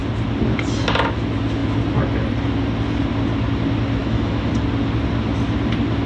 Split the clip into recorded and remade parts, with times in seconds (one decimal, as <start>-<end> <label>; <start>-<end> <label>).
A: 0.0-4.0 recorded; 4.0-4.5 remade; 4.5-6.1 recorded